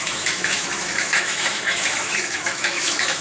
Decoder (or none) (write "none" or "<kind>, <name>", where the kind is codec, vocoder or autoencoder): autoencoder, DAC-VAE